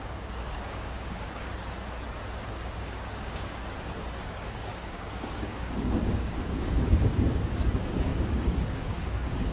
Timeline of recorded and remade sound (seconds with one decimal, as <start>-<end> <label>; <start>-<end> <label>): 0.0-1.5 remade; 1.5-2.5 recorded; 2.5-3.6 remade; 3.6-4.2 recorded; 4.2-9.5 remade